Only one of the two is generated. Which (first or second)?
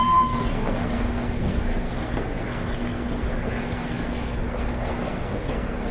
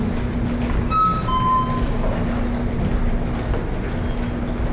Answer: first